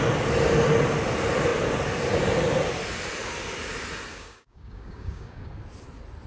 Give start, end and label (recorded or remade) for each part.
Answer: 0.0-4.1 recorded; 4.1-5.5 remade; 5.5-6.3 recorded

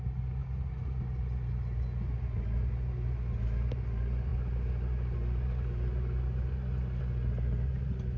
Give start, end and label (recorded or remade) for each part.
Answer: 0.0-8.2 recorded

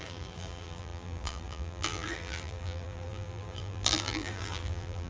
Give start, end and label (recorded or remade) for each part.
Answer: 0.0-5.1 remade

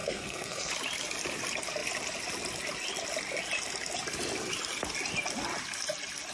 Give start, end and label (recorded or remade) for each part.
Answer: 0.0-0.7 remade; 0.7-6.3 recorded

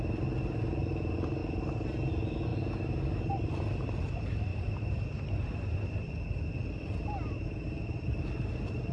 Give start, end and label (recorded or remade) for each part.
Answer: 0.0-8.9 recorded